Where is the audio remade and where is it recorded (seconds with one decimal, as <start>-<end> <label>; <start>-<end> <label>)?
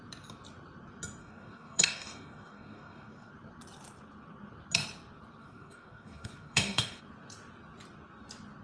0.0-1.2 recorded; 1.2-3.3 remade; 3.3-5.4 recorded; 5.4-7.0 remade; 7.0-8.6 recorded